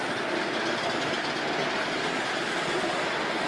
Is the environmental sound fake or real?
real